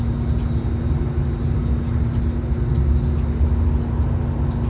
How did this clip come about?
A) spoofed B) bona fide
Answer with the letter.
B